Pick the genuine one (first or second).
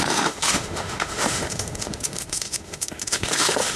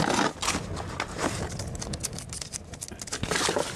second